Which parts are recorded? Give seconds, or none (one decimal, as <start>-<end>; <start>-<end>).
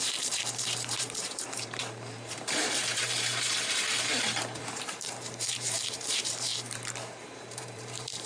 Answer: none